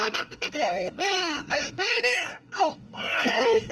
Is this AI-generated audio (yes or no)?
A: yes